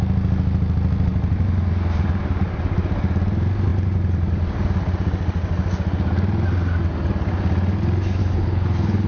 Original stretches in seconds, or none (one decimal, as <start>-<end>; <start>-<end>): 0.0-8.2